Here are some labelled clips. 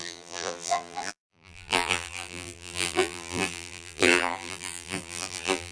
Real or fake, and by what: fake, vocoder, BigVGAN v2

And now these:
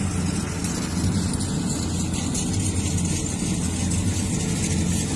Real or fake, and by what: real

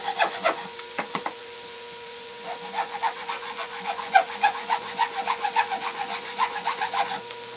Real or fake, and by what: fake, vocoder, Vocos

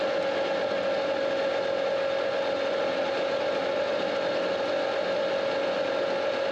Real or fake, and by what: real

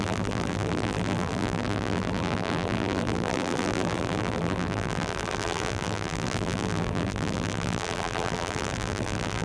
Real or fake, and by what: fake, vocoder, BigVGAN v2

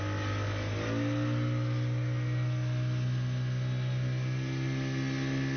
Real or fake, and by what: real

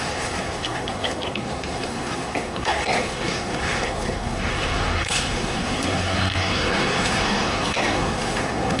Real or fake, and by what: fake, codec, SNAC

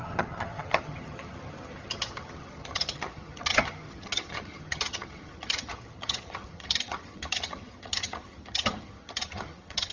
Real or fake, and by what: fake, vocoder, HiFi-GAN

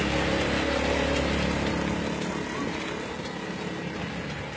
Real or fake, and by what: real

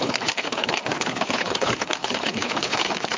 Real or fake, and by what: fake, codec, HILCodec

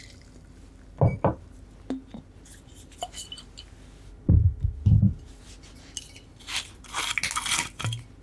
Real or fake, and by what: real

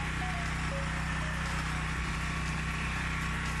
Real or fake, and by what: real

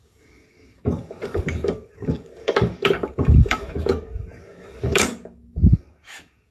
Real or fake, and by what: fake, codec, DAC